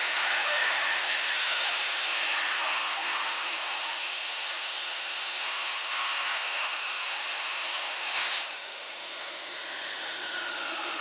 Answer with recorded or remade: remade